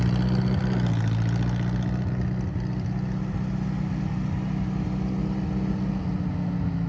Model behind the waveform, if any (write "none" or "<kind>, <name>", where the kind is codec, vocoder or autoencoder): none